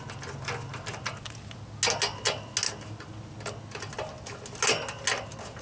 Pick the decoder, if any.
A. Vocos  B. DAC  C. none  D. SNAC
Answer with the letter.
C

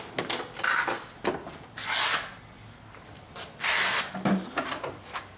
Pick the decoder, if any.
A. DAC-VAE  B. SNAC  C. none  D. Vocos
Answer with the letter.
C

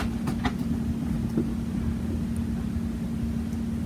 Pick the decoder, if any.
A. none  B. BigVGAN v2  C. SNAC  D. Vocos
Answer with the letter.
A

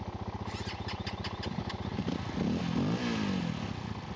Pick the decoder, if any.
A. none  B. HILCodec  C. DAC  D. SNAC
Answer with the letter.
A